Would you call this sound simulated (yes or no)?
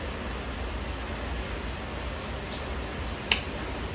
no